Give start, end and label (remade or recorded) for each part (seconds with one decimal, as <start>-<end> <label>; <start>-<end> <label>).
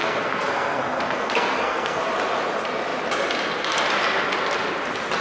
0.0-2.0 remade; 2.0-5.2 recorded